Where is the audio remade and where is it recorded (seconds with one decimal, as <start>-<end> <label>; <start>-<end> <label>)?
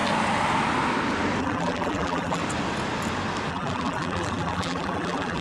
0.0-1.4 recorded; 1.4-2.4 remade; 2.4-3.5 recorded; 3.5-5.4 remade